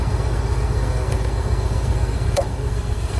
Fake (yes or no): yes